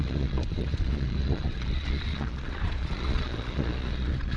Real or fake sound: fake